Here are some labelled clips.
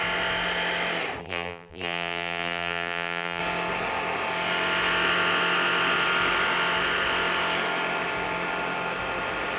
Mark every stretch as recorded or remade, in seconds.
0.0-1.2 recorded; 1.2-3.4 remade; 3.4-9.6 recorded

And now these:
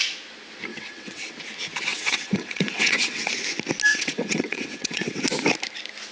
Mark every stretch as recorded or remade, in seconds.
0.0-0.7 recorded; 0.7-1.2 remade; 1.2-1.9 recorded; 1.9-3.3 remade; 3.3-3.9 recorded; 3.9-5.2 remade; 5.2-6.1 recorded

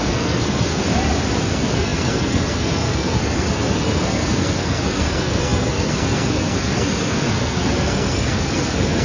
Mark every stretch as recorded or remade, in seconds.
0.0-0.8 remade; 0.8-1.4 recorded; 1.4-9.0 remade

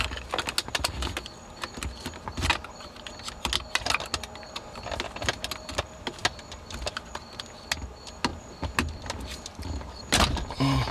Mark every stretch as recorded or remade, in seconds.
0.0-10.9 recorded

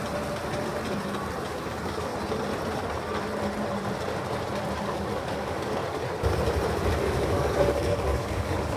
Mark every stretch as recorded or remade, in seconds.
0.0-1.5 recorded; 1.5-2.1 remade; 2.1-4.8 recorded; 4.8-5.8 remade; 5.8-6.9 recorded; 6.9-8.8 remade